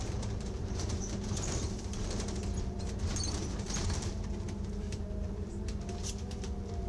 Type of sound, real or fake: fake